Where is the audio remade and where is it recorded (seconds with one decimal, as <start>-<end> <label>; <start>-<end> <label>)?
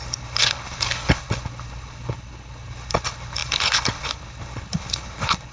0.0-5.5 remade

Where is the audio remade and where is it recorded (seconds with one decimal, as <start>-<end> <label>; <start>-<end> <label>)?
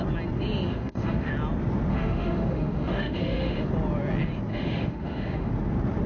0.0-0.7 recorded; 0.7-1.3 remade; 1.3-1.9 recorded; 1.9-3.7 remade; 3.7-4.5 recorded; 4.5-5.5 remade; 5.5-6.1 recorded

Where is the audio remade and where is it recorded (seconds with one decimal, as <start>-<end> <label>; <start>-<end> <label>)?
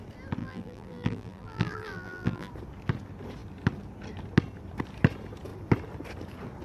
0.0-0.4 recorded; 0.4-2.5 remade; 2.5-6.6 recorded